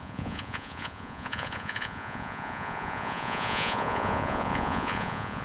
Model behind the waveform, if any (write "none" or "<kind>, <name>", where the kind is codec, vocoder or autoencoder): vocoder, Vocos